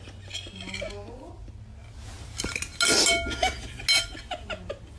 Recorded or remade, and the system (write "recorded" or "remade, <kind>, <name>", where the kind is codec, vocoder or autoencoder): recorded